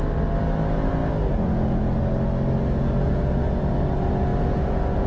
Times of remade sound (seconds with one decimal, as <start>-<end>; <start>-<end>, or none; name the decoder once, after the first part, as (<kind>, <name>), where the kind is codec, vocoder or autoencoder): none